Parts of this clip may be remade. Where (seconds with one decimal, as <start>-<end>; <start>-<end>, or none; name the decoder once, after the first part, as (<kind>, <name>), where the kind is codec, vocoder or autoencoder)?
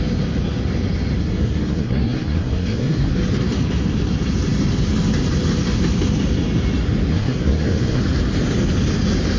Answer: 1.2-3.1 (codec, SNAC); 7.1-8.0